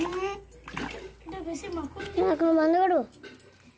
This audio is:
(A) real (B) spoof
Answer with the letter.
A